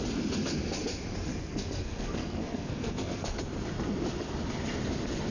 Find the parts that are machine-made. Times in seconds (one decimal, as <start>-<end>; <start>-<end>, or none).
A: 1.3-3.4